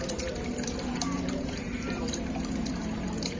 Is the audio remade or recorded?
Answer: remade